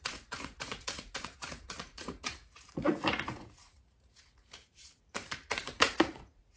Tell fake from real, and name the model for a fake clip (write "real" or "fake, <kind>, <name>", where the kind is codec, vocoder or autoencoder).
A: fake, vocoder, Vocos